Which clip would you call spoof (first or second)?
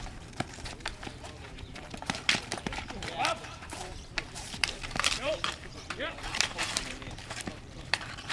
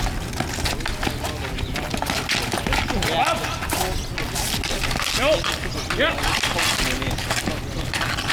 first